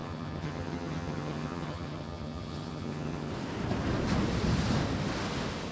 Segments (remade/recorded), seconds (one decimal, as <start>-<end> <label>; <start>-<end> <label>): 0.0-3.3 remade; 3.3-5.7 recorded